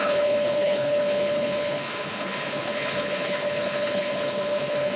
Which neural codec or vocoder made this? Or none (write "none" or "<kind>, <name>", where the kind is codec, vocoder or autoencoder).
codec, HILCodec